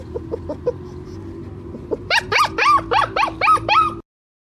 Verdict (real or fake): real